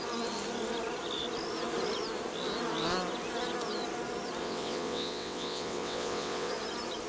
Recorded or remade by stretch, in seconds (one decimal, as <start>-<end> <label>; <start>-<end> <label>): 0.0-4.4 recorded; 4.4-6.5 remade; 6.5-7.1 recorded